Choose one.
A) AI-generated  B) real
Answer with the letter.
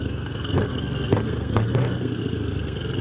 A